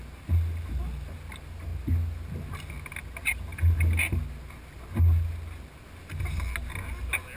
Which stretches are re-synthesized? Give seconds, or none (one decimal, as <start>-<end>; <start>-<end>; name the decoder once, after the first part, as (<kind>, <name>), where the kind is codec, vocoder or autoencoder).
none